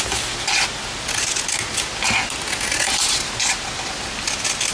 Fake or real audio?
real